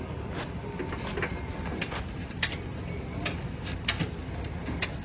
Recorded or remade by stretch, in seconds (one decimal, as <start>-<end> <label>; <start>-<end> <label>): 0.0-5.0 recorded